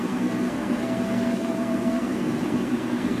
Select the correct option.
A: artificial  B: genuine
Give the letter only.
A